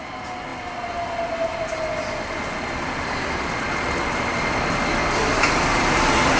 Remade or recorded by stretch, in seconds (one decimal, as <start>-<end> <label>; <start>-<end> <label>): 0.0-6.4 recorded